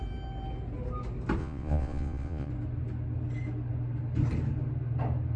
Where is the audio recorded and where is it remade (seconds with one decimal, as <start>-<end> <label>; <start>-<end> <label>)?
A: 0.0-1.4 recorded; 1.4-2.5 remade; 2.5-5.4 recorded